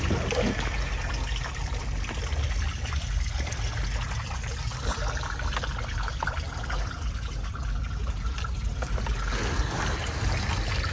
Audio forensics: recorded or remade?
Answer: recorded